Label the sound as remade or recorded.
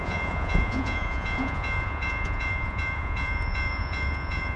remade